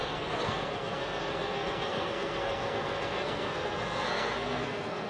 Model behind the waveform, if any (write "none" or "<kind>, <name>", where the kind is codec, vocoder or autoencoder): codec, SNAC